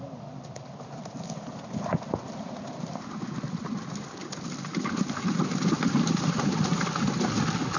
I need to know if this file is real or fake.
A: fake